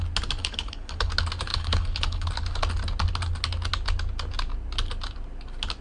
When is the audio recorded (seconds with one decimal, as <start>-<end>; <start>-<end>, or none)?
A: 0.0-0.4; 1.1-1.5; 2.3-5.8